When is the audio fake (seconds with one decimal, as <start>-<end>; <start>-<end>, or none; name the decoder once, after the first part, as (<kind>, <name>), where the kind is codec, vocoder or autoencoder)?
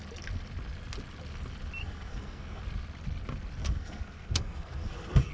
1.8-2.6 (codec, SNAC); 3.6-5.3